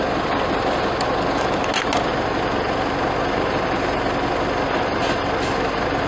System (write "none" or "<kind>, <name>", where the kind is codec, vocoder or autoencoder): none